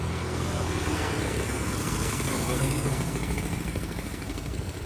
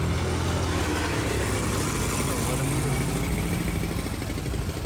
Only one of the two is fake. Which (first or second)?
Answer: first